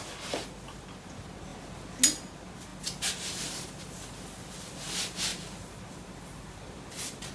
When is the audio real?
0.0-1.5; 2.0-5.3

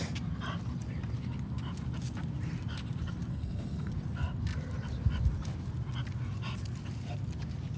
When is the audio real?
0.0-3.3; 3.9-7.8

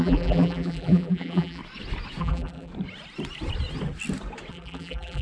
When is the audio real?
1.6-2.2; 2.7-4.5